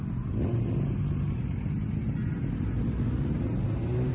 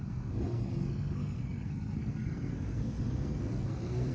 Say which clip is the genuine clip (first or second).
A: first